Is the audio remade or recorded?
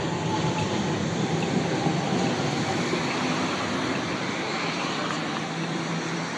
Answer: recorded